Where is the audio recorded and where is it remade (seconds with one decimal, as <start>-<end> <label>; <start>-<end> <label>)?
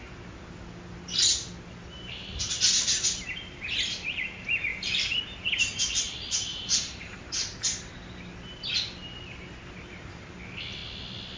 0.0-4.7 recorded; 4.7-5.2 remade; 5.2-6.5 recorded; 6.5-7.2 remade; 7.2-11.4 recorded